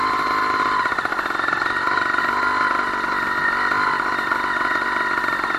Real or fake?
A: real